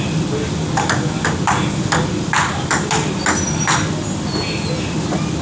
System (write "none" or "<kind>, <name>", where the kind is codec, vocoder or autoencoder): none